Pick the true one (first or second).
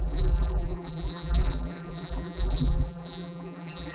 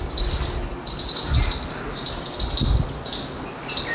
second